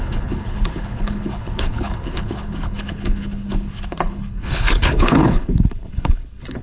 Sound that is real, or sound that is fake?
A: fake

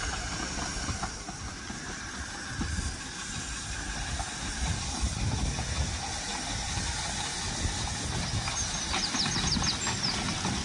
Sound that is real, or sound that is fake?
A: real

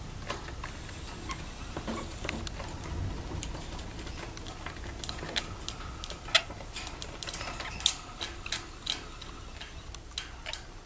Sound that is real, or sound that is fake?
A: real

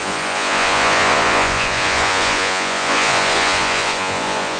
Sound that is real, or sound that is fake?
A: fake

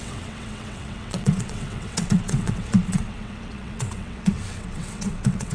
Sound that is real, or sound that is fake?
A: fake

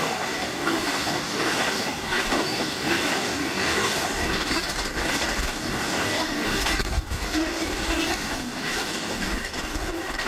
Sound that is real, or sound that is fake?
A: fake